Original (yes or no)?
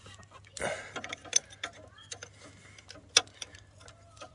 yes